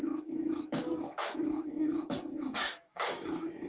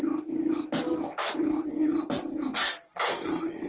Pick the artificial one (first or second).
first